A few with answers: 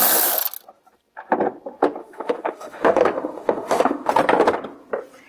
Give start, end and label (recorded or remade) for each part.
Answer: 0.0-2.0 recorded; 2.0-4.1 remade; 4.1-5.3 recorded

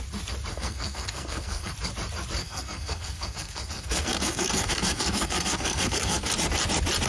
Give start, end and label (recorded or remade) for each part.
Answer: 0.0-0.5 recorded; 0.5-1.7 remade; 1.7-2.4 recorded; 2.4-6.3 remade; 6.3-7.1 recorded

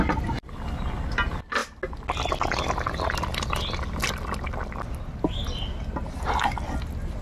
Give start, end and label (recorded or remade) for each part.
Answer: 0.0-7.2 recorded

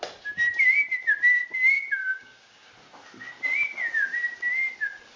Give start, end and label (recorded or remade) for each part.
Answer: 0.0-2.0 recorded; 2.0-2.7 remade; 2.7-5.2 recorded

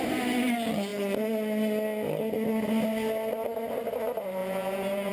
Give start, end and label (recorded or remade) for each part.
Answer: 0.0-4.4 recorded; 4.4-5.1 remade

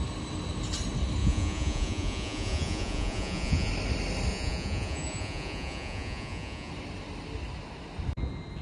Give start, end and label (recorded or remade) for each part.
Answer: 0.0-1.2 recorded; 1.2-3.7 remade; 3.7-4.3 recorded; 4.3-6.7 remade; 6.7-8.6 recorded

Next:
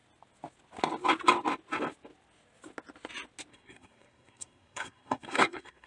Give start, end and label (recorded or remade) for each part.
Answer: 0.0-3.5 recorded; 3.5-5.9 remade

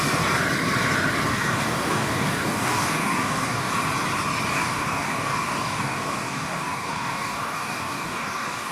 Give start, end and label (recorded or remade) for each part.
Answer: 0.0-1.3 recorded; 1.3-3.7 remade; 3.7-4.5 recorded; 4.5-8.7 remade